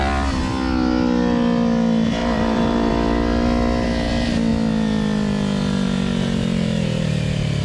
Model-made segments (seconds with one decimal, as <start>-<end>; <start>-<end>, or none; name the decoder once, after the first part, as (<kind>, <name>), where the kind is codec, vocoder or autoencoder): 2.2-2.9 (vocoder, BigVGAN v2)

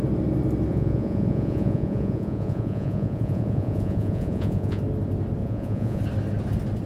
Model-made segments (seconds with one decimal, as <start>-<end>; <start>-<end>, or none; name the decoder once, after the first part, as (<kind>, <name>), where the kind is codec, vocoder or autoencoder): 0.7-4.8 (vocoder, Vocos); 5.4-6.0

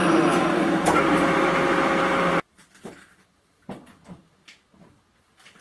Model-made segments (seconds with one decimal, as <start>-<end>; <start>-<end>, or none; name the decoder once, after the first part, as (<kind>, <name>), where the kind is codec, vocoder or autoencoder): none

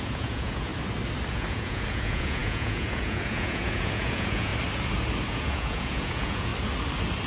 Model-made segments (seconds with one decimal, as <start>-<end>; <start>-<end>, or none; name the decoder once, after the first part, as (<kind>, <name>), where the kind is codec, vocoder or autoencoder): 0.0-0.7 (vocoder, Vocos); 1.3-4.5; 5.3-6.5

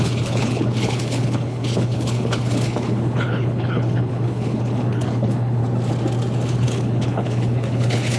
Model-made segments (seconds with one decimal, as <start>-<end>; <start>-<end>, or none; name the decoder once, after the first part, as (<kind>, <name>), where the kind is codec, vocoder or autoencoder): 0.0-5.6 (codec, HILCodec); 6.5-8.2

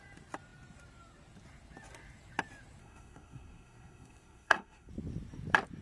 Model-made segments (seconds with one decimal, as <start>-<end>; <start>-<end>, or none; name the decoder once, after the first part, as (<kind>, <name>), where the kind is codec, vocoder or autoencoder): 2.8-4.9 (codec, SNAC)

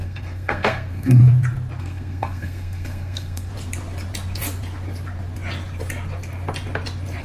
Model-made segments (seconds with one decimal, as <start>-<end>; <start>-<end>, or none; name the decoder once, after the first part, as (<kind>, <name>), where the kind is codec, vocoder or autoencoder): 0.0-1.2 (codec, SNAC); 1.8-3.5